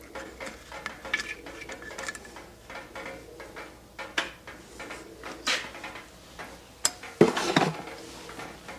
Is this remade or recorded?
recorded